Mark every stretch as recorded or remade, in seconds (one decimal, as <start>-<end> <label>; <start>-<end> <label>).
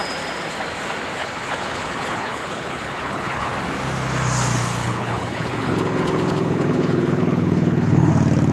0.0-1.2 recorded; 1.2-3.5 remade; 3.5-4.8 recorded; 4.8-8.1 remade; 8.1-8.5 recorded